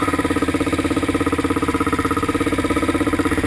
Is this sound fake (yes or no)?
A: yes